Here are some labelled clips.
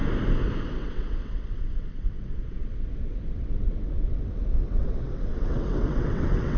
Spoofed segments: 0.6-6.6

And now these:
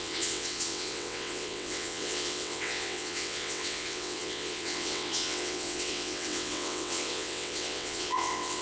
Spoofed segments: 0.0-8.6